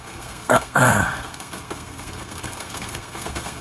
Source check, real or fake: fake